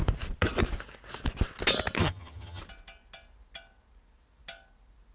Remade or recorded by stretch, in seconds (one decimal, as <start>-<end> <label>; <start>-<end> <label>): 0.0-2.0 recorded; 2.0-2.6 remade; 2.6-5.1 recorded